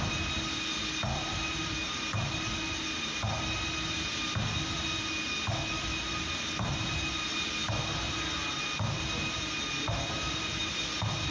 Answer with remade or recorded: recorded